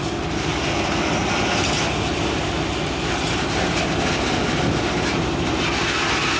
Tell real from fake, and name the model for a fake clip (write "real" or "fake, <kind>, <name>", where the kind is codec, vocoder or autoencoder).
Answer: real